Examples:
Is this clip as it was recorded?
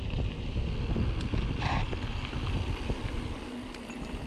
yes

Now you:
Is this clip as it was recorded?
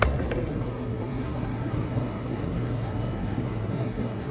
no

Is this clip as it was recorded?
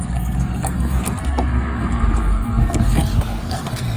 no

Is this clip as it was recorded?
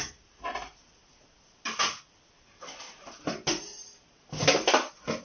yes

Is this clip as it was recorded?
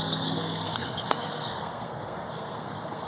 no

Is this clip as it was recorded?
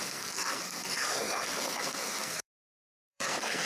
no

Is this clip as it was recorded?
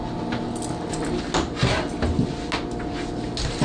yes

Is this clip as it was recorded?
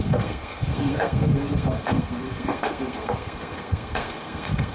no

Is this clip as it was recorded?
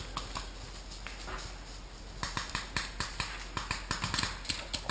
yes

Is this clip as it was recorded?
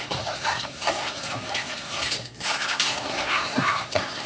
no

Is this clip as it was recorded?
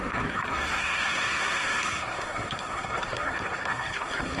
no